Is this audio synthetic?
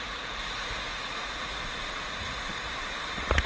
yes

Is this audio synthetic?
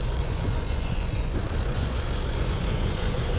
yes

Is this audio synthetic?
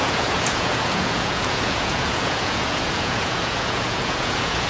yes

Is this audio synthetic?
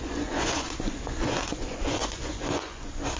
yes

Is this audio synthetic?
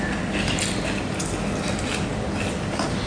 no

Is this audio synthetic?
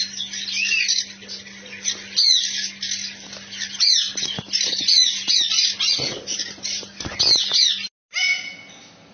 no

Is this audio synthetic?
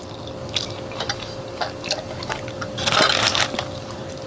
no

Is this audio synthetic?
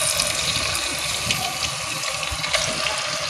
no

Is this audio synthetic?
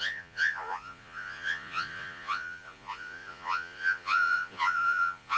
yes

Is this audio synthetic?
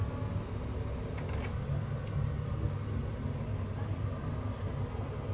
no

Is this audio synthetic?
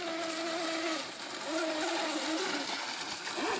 no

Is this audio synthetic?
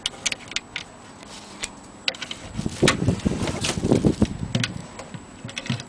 no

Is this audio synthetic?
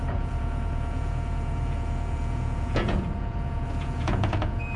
yes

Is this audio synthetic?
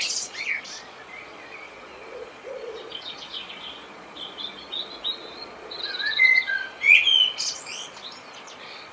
yes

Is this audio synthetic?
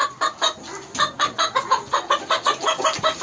no